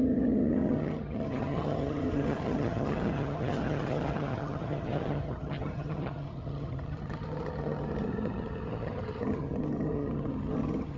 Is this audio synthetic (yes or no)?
yes